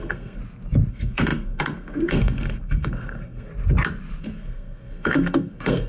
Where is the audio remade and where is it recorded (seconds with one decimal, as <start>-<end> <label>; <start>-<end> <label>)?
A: 0.0-0.4 remade; 0.4-0.9 recorded; 0.9-3.5 remade; 3.5-4.2 recorded; 4.2-5.9 remade